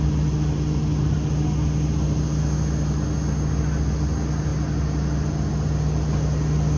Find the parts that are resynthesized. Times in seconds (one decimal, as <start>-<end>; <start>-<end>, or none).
none